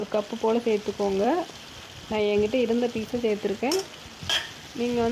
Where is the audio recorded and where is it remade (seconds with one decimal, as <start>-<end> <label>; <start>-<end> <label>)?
0.0-3.1 remade; 3.1-5.1 recorded